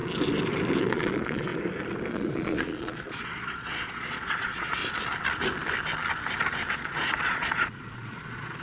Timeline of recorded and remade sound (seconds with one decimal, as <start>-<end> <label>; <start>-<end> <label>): 0.0-0.8 recorded; 0.8-1.5 remade; 1.5-2.1 recorded; 2.1-4.8 remade; 4.8-6.7 recorded; 6.7-8.6 remade